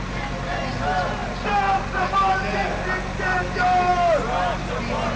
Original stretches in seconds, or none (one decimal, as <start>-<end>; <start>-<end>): 0.0-5.2